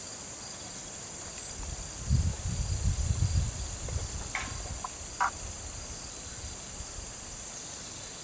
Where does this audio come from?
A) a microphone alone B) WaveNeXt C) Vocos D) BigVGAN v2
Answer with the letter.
A